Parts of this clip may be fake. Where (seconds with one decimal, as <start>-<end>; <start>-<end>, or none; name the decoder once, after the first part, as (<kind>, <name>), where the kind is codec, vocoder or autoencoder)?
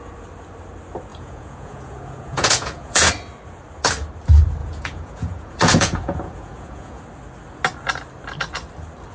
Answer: 1.1-3.1 (vocoder, Vocos); 4.6-7.0